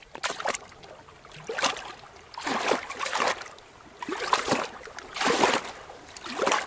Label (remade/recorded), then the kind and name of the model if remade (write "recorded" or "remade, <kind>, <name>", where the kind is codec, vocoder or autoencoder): recorded